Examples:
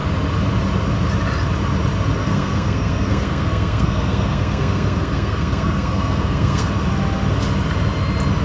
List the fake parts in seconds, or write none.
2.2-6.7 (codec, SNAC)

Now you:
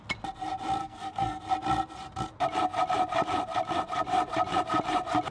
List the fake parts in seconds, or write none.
0.8-1.4 (codec, SNAC)